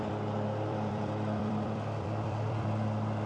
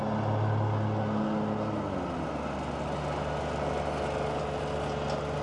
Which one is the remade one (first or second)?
first